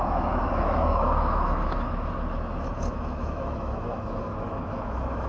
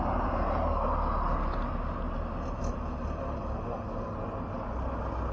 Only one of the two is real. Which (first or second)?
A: second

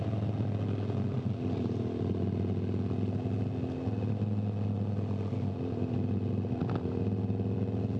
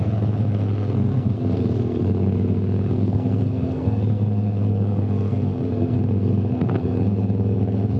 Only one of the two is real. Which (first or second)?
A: first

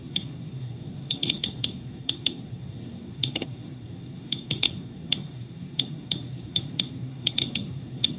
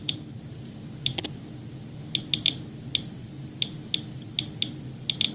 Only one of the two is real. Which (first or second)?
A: second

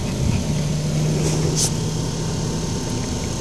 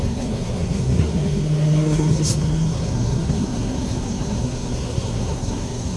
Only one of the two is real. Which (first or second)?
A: first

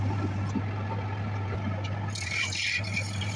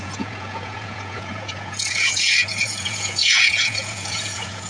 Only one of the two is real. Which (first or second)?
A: first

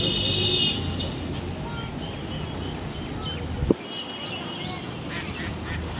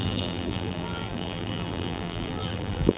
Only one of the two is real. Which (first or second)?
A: first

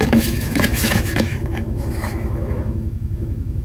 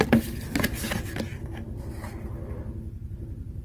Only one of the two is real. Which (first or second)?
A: second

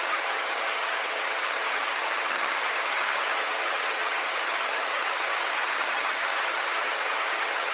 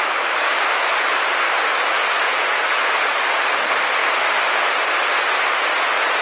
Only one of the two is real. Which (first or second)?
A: second